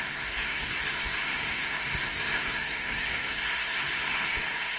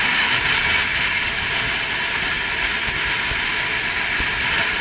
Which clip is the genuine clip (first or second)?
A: second